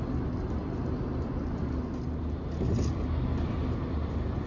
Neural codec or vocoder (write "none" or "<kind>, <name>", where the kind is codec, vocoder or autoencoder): none